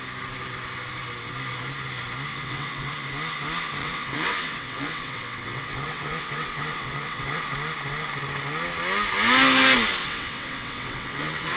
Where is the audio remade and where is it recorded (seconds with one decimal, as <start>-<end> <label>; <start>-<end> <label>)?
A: 0.0-2.3 recorded; 2.3-2.9 remade; 2.9-3.8 recorded; 3.8-7.4 remade; 7.4-10.0 recorded; 10.0-11.6 remade